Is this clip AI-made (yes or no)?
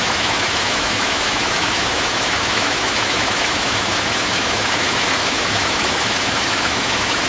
yes